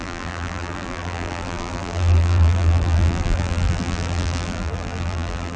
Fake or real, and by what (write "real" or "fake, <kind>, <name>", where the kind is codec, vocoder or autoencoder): fake, vocoder, BigVGAN v2